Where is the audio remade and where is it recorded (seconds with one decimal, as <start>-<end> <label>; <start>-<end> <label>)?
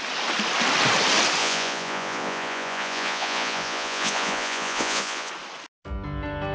0.0-1.4 recorded; 1.4-5.3 remade; 5.3-6.5 recorded